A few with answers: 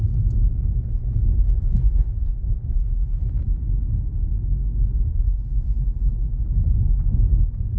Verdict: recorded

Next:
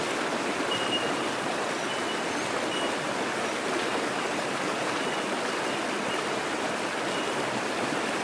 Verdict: recorded